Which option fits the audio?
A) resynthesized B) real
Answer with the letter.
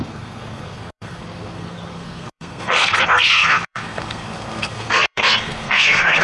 A